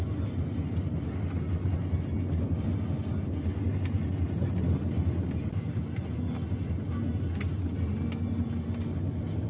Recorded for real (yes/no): yes